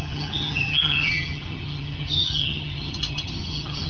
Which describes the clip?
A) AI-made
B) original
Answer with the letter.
A